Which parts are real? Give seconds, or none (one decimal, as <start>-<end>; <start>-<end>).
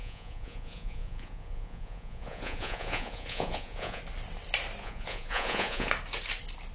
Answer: 4.0-4.8; 5.9-6.7